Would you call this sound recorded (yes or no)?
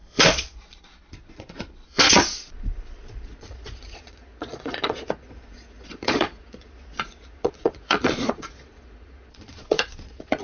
no